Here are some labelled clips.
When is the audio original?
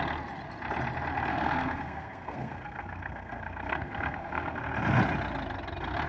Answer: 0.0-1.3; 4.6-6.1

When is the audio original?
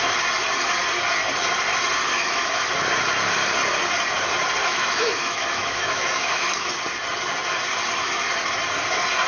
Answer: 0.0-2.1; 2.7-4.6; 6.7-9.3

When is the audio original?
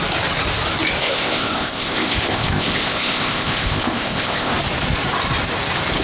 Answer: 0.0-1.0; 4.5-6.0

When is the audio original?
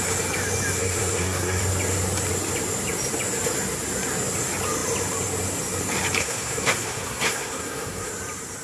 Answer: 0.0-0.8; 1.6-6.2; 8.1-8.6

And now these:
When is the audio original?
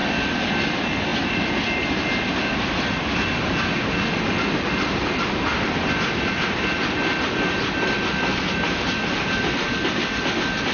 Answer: 0.0-10.7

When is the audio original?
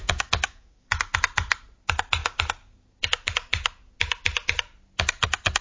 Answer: 1.1-5.6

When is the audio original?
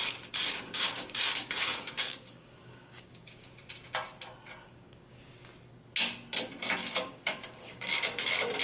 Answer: 3.5-4.6; 5.3-6.8; 7.9-8.6